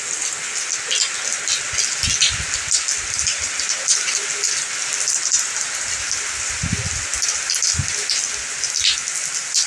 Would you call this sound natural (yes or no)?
yes